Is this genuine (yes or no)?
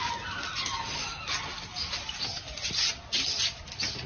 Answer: yes